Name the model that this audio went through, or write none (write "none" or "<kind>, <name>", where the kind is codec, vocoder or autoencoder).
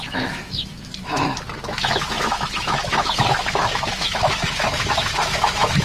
autoencoder, DAC-VAE